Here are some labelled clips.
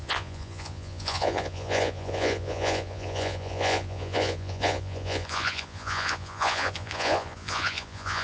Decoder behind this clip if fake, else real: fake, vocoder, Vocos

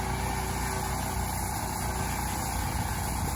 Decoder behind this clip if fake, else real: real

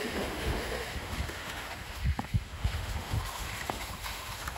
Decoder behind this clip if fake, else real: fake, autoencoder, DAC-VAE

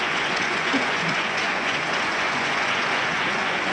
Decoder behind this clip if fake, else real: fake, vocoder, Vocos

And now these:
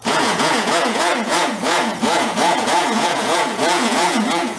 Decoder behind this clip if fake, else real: fake, vocoder, Vocos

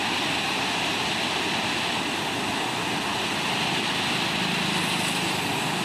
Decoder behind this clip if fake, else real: real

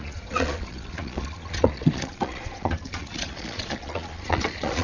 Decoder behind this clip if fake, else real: fake, vocoder, Vocos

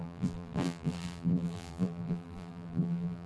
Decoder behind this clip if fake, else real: fake, vocoder, BigVGAN v2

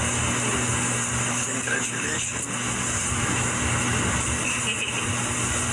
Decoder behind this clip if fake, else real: real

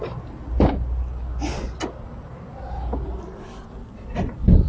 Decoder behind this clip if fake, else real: real